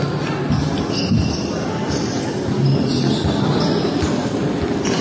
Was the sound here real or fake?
real